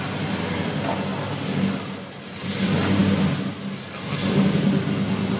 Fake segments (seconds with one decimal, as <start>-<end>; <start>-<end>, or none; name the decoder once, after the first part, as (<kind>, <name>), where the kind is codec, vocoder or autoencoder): none